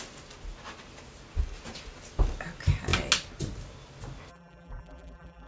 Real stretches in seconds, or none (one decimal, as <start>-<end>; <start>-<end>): 0.0-4.3